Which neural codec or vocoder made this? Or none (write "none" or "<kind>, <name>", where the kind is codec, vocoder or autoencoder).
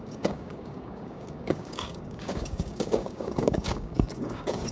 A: codec, DAC